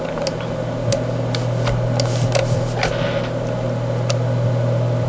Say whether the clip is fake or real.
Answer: real